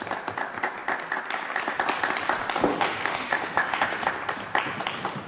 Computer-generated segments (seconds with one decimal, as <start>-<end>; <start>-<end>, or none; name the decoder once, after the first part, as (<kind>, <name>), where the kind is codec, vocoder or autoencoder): 2.7-4.1 (autoencoder, DAC-VAE)